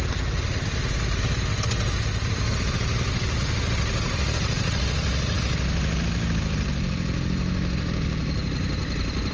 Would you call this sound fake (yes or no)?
no